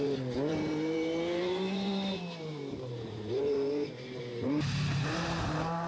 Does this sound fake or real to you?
fake